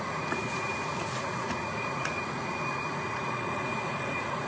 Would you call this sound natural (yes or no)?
no